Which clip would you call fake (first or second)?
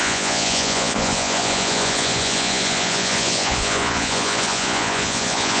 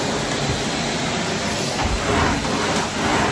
first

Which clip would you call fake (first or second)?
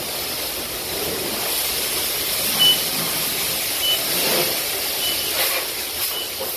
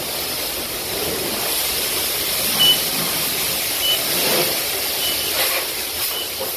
second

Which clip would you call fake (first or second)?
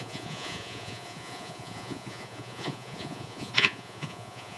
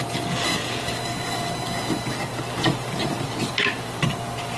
first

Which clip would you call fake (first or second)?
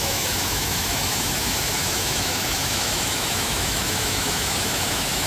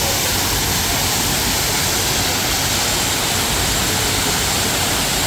first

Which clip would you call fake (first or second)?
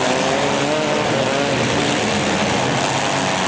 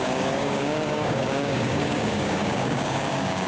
second